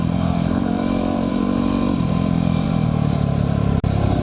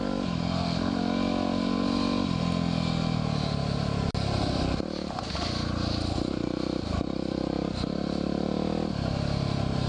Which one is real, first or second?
second